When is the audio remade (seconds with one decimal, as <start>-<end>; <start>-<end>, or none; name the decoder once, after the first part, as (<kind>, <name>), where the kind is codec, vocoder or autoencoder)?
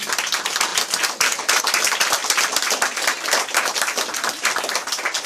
none